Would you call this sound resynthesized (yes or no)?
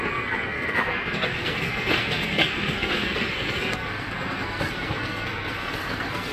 yes